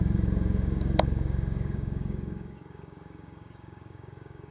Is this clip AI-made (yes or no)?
yes